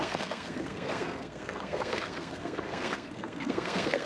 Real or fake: fake